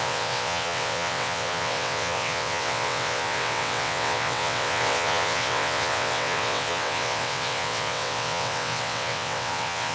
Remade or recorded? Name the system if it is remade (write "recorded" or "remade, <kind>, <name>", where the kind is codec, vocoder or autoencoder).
remade, vocoder, WaveNeXt